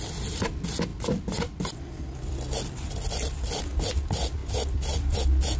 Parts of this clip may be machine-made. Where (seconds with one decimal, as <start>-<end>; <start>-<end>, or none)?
none